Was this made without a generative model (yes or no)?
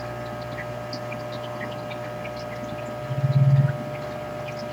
yes